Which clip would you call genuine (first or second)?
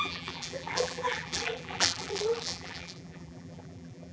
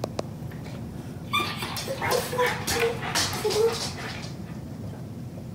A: second